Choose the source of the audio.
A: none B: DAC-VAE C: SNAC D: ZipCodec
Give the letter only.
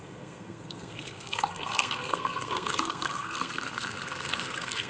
C